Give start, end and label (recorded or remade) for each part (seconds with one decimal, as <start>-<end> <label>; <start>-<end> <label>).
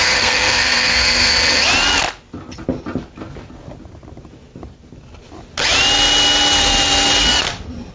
0.0-1.3 remade; 1.3-7.9 recorded